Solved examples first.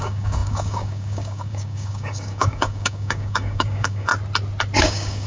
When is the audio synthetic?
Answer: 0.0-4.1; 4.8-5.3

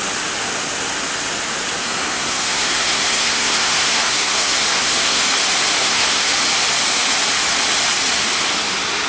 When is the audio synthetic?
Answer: 1.8-5.2; 5.8-6.3

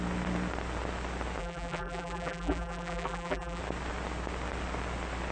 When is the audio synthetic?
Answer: 1.4-3.6

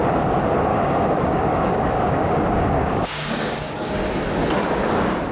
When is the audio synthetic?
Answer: 0.7-3.9